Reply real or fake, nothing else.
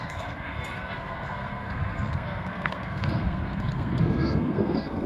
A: fake